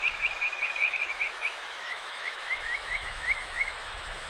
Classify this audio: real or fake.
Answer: fake